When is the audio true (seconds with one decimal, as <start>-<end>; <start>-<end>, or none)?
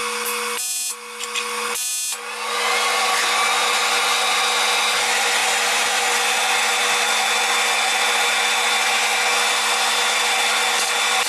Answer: 0.0-11.3